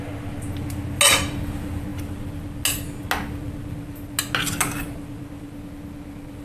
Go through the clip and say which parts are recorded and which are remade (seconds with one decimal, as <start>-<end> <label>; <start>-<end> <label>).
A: 0.0-6.4 recorded